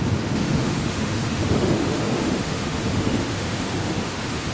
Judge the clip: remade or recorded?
remade